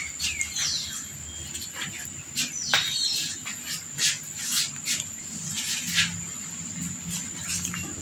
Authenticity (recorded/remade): recorded